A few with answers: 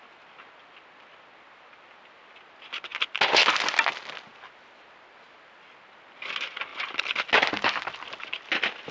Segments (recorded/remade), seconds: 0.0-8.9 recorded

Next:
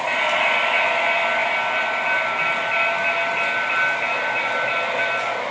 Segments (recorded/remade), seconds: 0.0-5.5 recorded

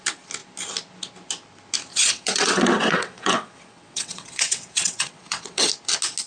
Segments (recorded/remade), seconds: 0.0-1.9 recorded; 1.9-5.7 remade; 5.7-6.3 recorded

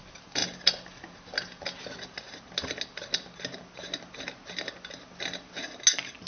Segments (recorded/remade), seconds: 0.0-6.3 recorded